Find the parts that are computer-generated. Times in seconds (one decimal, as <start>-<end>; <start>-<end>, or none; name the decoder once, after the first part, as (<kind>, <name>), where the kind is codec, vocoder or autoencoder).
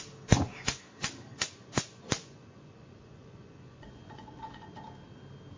1.3-4.7 (vocoder, Vocos)